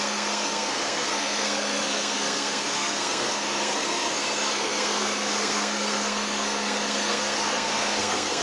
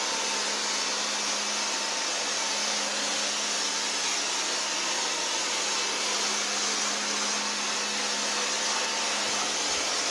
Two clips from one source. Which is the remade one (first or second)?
first